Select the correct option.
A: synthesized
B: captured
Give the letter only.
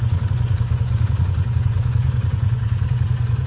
A